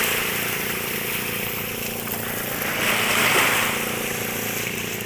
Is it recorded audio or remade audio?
recorded